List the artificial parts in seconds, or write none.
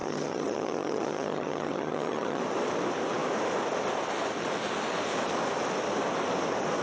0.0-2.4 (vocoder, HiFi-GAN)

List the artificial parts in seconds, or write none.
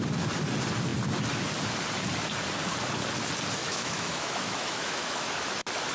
3.6-5.3 (autoencoder, DAC-VAE)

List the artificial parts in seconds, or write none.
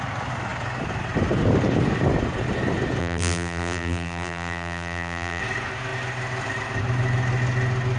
3.0-5.4 (vocoder, BigVGAN v2)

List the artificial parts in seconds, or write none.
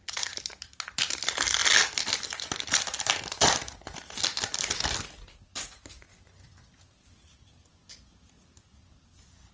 none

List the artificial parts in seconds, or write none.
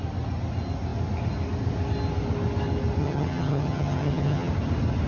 3.0-4.5 (vocoder, HiFi-GAN)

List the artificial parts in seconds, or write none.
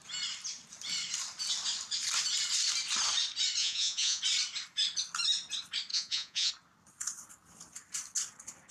3.6-4.2 (vocoder, Vocos); 5.9-6.5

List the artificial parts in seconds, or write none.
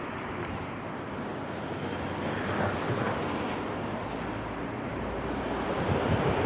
0.0-1.3 (vocoder, BigVGAN v2); 4.6-6.5